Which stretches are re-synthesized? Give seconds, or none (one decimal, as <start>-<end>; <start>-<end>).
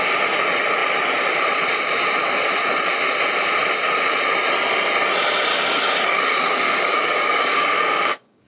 5.5-8.5